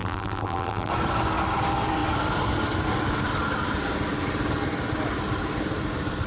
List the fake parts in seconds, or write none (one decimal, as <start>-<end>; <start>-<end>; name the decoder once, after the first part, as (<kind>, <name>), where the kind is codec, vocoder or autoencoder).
0.0-0.9 (vocoder, BigVGAN v2)